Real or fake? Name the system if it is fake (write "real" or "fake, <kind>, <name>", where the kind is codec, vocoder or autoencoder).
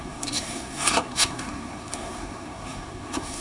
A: fake, codec, SNAC